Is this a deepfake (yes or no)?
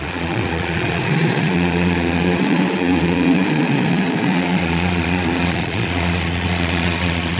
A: yes